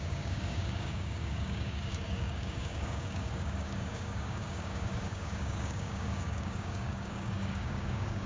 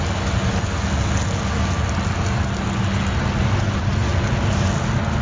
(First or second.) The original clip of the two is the second